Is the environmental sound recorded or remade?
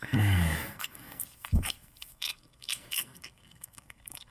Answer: remade